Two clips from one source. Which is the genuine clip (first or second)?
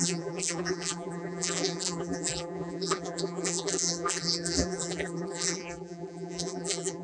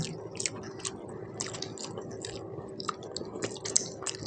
second